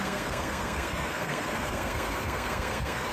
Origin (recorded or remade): remade